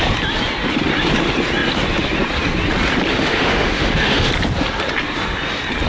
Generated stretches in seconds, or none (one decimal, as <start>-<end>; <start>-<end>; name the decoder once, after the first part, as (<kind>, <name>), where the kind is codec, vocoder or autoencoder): 3.1-4.3 (autoencoder, DAC-VAE)